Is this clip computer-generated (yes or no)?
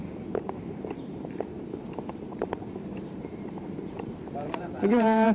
yes